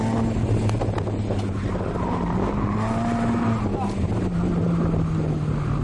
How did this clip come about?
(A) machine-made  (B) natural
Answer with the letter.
B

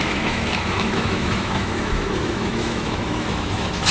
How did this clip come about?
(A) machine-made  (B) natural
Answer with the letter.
A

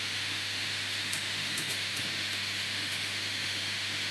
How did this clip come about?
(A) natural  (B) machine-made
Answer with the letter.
B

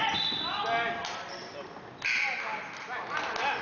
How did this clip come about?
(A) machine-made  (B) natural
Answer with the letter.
B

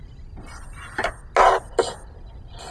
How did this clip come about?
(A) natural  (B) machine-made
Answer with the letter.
A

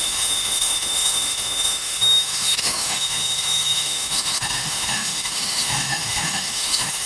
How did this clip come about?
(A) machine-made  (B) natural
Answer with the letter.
A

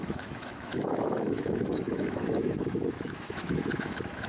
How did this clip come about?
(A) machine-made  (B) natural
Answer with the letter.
A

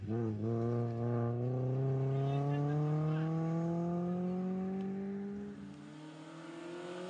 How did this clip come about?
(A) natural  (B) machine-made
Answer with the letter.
A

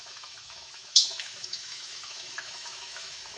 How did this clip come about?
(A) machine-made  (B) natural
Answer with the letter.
A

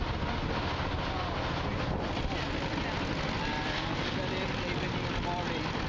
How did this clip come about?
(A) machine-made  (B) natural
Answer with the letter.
B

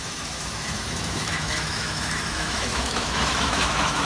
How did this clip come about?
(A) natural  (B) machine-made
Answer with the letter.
B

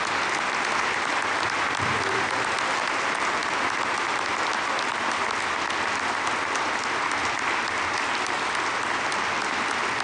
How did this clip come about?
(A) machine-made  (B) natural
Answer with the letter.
B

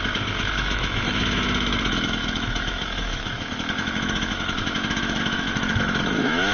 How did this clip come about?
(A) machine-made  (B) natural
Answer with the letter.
A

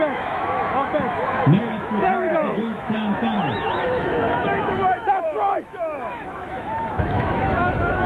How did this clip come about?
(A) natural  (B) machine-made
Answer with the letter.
B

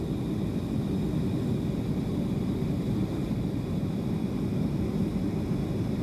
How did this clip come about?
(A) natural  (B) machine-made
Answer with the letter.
A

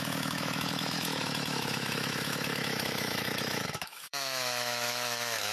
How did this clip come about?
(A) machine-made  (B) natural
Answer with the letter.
A